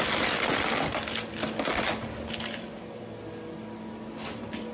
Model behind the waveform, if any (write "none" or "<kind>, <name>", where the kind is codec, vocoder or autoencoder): none